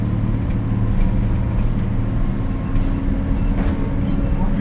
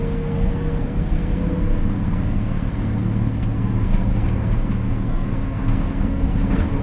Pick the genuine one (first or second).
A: first